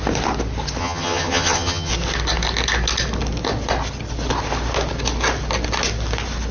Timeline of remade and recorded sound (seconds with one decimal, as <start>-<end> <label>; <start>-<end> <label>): 0.0-0.8 recorded; 0.8-1.9 remade; 1.9-6.5 recorded